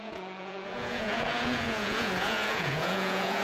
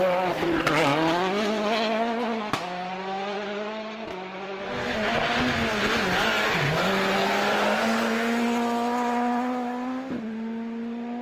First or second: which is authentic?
second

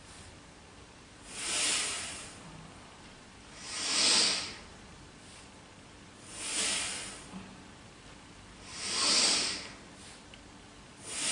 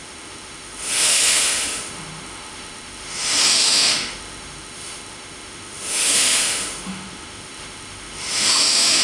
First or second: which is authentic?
first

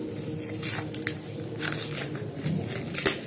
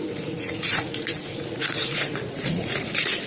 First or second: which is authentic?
first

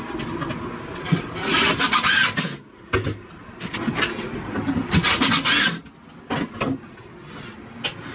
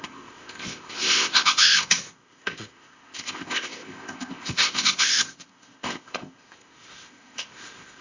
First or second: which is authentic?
first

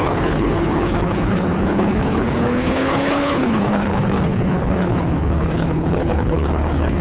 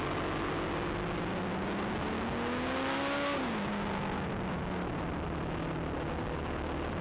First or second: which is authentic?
second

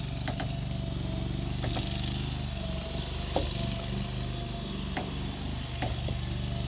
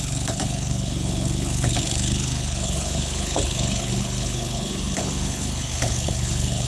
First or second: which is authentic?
first